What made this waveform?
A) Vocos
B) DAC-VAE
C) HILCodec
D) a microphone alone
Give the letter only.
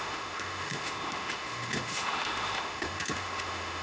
B